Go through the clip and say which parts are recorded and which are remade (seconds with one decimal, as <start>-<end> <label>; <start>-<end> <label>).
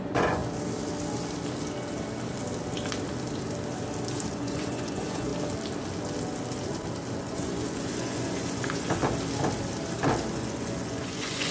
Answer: 0.0-0.4 remade; 0.4-4.3 recorded; 4.3-5.3 remade; 5.3-7.2 recorded; 7.2-9.0 remade; 9.0-10.3 recorded; 10.3-11.5 remade